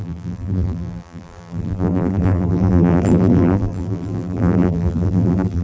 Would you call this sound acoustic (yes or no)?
no